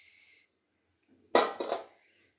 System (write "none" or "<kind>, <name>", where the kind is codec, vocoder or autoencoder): none